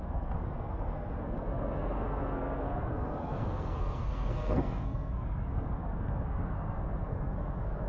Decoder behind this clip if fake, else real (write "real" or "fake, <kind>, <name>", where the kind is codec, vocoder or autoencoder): fake, codec, SNAC